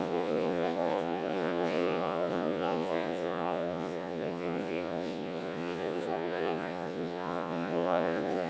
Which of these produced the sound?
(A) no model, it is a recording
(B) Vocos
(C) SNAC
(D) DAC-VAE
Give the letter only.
B